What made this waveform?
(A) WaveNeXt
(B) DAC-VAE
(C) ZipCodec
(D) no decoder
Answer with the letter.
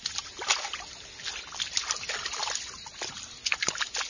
D